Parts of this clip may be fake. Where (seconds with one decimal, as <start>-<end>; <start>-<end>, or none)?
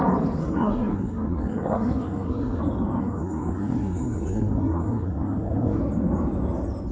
0.4-2.6; 3.0-5.8